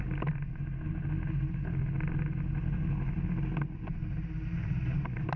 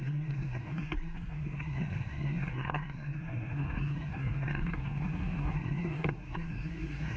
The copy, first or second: second